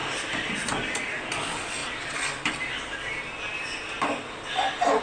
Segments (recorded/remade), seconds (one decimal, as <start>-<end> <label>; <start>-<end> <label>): 0.0-5.0 recorded